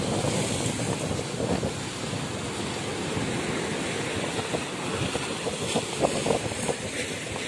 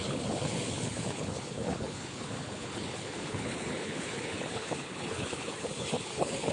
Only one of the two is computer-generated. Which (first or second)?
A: second